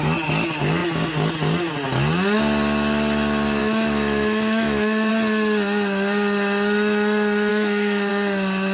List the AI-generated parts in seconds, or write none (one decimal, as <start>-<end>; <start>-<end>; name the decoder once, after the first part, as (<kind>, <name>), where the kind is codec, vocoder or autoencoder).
3.6-5.1 (autoencoder, DAC-VAE); 7.5-8.1